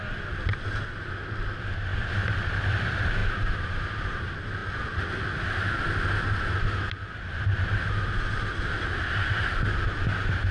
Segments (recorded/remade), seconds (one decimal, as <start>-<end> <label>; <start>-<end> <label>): 0.0-1.9 recorded; 1.9-2.6 remade; 2.6-10.5 recorded